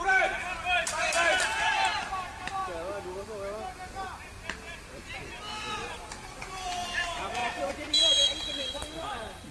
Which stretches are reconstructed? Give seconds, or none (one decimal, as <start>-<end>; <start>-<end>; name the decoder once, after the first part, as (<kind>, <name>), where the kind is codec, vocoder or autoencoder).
0.0-2.6 (vocoder, BigVGAN v2); 5.7-9.5